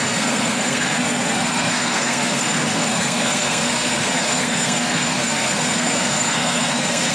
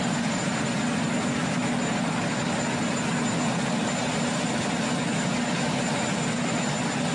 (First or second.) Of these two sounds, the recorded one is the second